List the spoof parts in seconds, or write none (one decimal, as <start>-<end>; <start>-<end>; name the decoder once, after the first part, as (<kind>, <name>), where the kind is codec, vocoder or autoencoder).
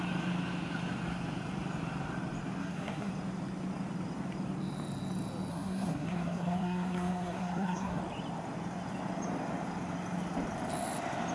2.6-3.1 (codec, SNAC); 5.5-8.0